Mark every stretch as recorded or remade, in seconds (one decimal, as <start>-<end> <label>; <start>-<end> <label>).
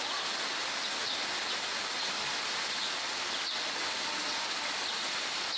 0.0-5.6 recorded